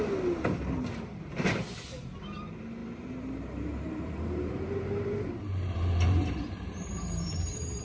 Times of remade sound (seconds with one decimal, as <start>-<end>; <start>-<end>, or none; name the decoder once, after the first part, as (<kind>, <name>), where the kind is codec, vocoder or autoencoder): 2.8-7.8 (vocoder, BigVGAN v2)